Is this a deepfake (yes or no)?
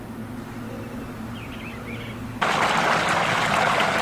no